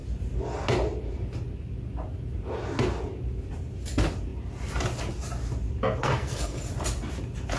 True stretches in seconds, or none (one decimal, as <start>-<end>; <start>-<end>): 0.0-6.0; 6.6-7.6